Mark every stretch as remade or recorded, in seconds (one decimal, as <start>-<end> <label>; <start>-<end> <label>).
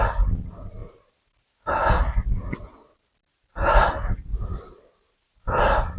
0.0-0.8 recorded; 0.8-1.7 remade; 1.7-4.3 recorded; 4.3-5.6 remade; 5.6-6.0 recorded